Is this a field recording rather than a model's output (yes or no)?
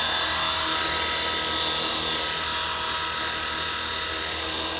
yes